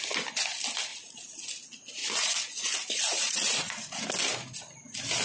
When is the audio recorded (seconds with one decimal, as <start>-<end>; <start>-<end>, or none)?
0.0-0.9; 1.5-2.0; 4.0-5.2